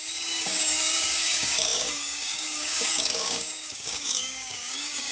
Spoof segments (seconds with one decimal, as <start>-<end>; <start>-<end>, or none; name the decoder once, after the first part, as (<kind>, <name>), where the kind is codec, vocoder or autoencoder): 0.0-5.1 (codec, DAC)